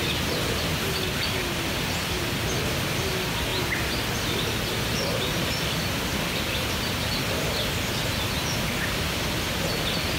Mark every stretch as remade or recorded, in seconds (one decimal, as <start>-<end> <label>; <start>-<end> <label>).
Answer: 0.0-10.2 recorded